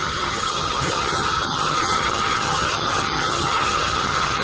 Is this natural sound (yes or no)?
no